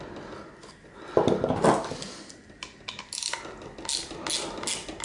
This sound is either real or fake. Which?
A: real